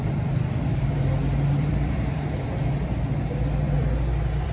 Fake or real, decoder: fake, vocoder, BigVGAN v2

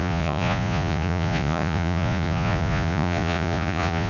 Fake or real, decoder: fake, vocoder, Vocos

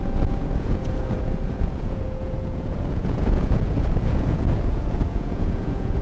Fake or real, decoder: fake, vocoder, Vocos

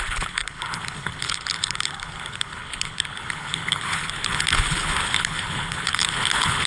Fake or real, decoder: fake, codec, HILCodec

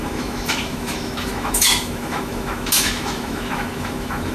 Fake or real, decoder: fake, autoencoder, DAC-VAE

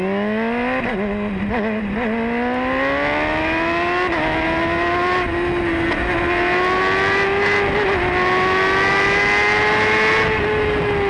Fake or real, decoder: real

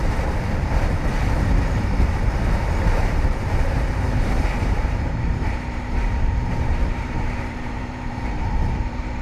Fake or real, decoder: fake, vocoder, BigVGAN v2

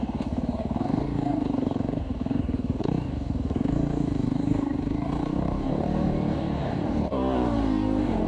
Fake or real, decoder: fake, codec, DAC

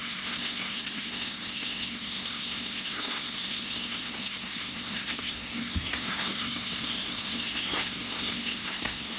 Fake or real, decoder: fake, codec, SNAC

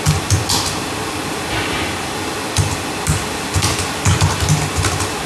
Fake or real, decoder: real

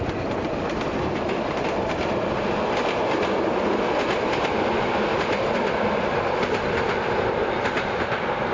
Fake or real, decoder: real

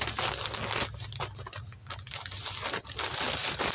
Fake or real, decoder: real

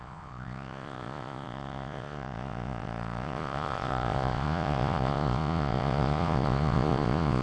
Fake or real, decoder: fake, vocoder, Vocos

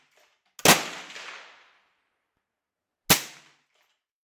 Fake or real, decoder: real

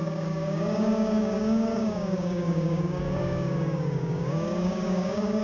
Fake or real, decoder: fake, codec, DAC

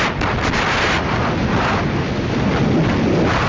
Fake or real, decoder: real